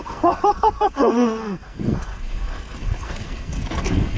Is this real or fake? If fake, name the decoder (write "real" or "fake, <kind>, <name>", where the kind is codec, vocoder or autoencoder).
fake, codec, SNAC